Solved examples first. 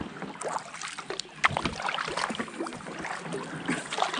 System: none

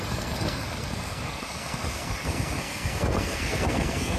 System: codec, SNAC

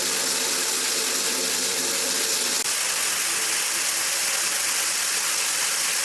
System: none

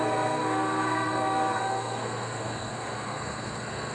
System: codec, SNAC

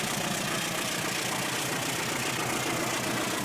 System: none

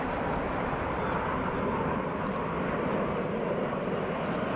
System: none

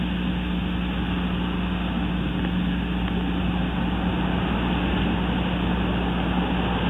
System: none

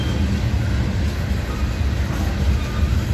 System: none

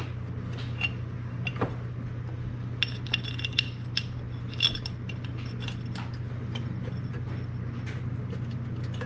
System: none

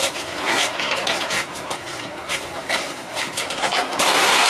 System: codec, SNAC